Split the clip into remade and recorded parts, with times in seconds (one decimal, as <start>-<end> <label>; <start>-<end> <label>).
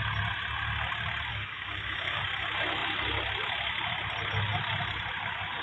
0.0-1.3 recorded; 1.3-2.2 remade; 2.2-5.6 recorded